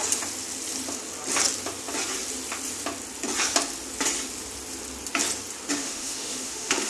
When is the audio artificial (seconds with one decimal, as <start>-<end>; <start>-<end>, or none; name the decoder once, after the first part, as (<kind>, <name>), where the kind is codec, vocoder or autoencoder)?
5.8-6.9 (autoencoder, DAC-VAE)

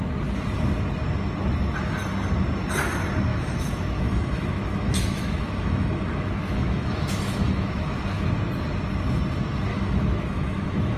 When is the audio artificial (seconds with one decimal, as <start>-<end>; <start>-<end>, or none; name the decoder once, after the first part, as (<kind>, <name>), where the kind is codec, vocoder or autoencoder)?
3.3-8.3 (autoencoder, DAC-VAE); 9.7-11.0

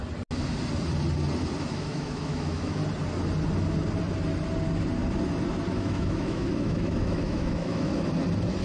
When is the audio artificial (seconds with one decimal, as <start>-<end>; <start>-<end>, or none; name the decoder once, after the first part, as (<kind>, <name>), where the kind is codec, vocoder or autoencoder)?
1.7-2.8 (autoencoder, DAC-VAE); 5.7-7.9